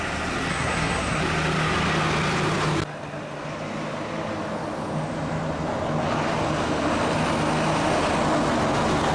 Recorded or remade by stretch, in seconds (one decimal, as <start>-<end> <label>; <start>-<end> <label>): 0.0-0.5 recorded; 0.5-1.2 remade; 1.2-9.1 recorded